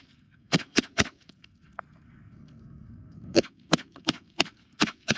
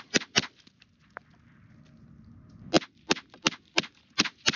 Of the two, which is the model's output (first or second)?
first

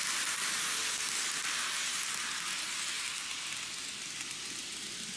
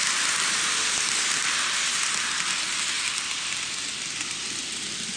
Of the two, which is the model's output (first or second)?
second